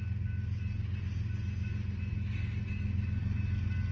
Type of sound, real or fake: real